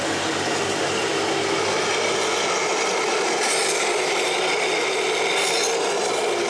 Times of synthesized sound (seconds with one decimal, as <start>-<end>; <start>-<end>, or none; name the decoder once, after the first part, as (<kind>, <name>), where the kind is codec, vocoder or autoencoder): none